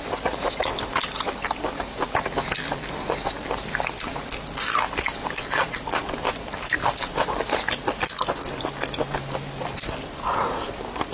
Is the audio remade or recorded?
recorded